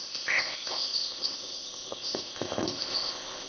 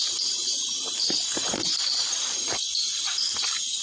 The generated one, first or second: first